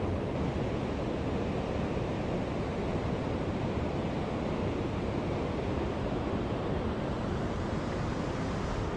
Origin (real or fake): real